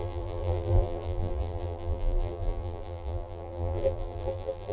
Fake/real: fake